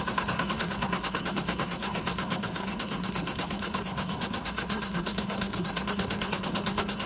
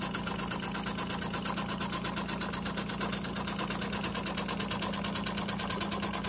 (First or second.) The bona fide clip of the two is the second